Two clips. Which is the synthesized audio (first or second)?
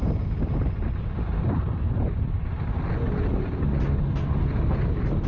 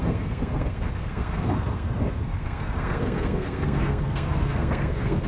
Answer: second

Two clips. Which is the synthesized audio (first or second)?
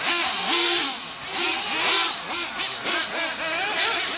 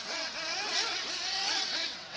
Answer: second